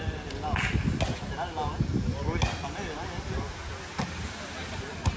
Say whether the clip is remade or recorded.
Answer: recorded